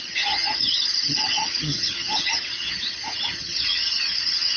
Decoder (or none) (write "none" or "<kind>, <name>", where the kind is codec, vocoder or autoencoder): vocoder, HiFi-GAN